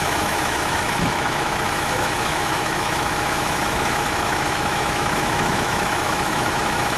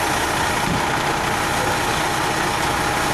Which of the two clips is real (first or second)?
second